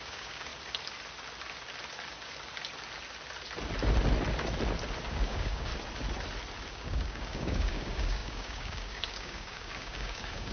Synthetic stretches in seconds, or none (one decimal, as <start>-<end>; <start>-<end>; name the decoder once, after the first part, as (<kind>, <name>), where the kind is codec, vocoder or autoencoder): 0.0-0.5 (codec, DAC); 5.1-5.7; 6.7-10.5